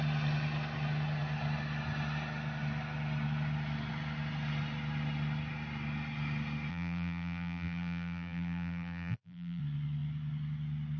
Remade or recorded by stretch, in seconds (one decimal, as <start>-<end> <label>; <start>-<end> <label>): 0.0-6.7 recorded; 6.7-9.6 remade; 9.6-11.0 recorded